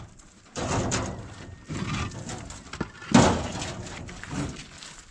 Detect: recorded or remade recorded